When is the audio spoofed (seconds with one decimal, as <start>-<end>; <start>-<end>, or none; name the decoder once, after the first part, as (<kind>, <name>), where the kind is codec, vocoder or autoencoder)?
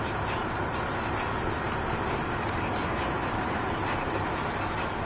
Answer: 2.8-3.3 (vocoder, Vocos)